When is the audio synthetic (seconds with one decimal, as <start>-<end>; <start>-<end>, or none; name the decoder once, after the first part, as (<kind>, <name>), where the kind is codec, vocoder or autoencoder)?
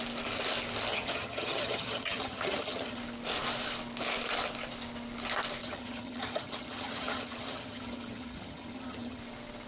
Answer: 0.9-3.0 (vocoder, HiFi-GAN); 5.6-9.2